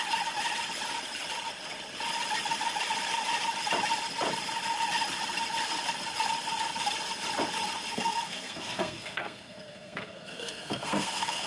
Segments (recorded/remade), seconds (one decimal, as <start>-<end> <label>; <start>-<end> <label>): 0.0-7.9 recorded; 7.9-11.5 remade